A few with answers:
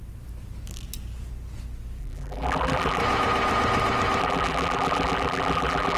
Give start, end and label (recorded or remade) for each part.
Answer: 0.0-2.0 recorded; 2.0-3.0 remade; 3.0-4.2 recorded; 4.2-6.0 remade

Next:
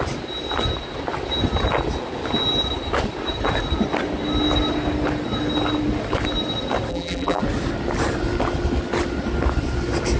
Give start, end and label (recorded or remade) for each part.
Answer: 0.0-6.9 recorded; 6.9-7.4 remade; 7.4-10.2 recorded

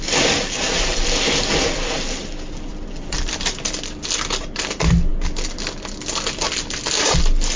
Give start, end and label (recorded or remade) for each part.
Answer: 0.0-2.7 recorded; 2.7-3.4 remade; 3.4-7.6 recorded

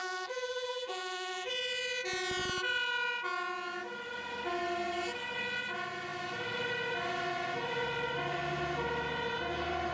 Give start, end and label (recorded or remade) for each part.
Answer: 0.0-1.5 remade; 1.5-9.9 recorded

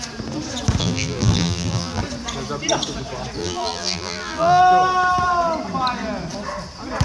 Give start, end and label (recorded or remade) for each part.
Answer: 0.0-0.8 recorded; 0.8-2.0 remade; 2.0-3.4 recorded; 3.4-4.6 remade; 4.6-7.0 recorded

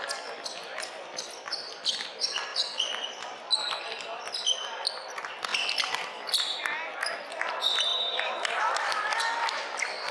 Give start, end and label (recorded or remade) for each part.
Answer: 0.0-7.9 remade; 7.9-8.6 recorded; 8.6-10.1 remade